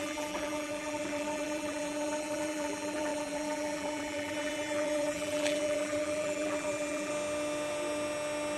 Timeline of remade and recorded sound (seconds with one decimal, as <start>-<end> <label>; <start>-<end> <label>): 0.0-7.1 remade; 7.1-8.6 recorded